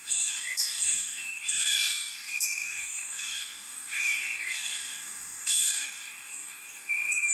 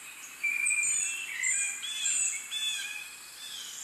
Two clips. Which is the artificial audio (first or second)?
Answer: first